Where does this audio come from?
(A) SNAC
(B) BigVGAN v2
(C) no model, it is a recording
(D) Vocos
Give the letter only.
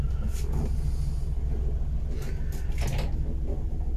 C